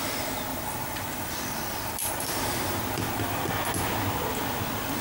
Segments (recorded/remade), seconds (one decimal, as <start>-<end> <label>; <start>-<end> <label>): 0.0-0.5 recorded; 0.5-3.5 remade; 3.5-5.0 recorded

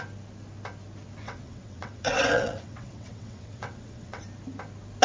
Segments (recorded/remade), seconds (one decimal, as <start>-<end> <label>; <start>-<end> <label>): 0.0-1.2 recorded; 1.2-4.2 remade; 4.2-5.0 recorded

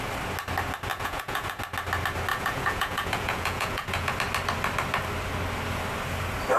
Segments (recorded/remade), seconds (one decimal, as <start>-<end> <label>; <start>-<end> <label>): 0.0-0.9 recorded; 0.9-1.6 remade; 1.6-2.3 recorded; 2.3-4.1 remade; 4.1-6.6 recorded

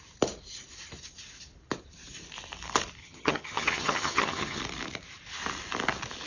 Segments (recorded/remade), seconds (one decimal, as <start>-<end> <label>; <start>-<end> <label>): 0.0-3.0 recorded; 3.0-4.6 remade; 4.6-6.3 recorded

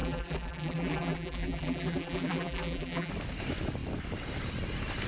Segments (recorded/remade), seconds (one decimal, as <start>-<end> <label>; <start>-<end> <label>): 0.0-3.1 remade; 3.1-5.1 recorded

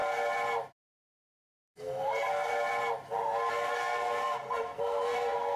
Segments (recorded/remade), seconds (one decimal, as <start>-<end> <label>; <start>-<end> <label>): 0.0-1.2 recorded; 1.2-2.5 remade; 2.5-3.5 recorded; 3.5-5.6 remade

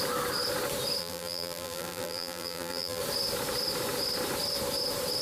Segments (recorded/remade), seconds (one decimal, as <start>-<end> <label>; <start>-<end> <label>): 0.0-1.0 recorded; 1.0-3.0 remade; 3.0-5.2 recorded

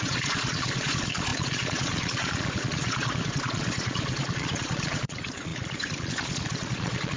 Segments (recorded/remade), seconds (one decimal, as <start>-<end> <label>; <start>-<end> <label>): 0.0-7.2 remade